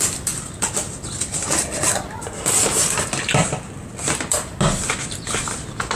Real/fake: real